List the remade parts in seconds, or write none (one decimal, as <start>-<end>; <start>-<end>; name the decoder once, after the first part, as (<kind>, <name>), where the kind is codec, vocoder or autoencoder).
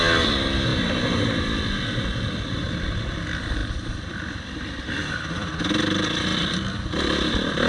0.7-1.4 (vocoder, BigVGAN v2); 3.6-4.6; 6.3-7.7